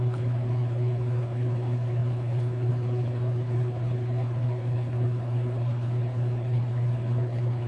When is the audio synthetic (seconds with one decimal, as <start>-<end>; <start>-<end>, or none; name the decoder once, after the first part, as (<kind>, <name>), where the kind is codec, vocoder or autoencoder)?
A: 0.0-7.7 (codec, HILCodec)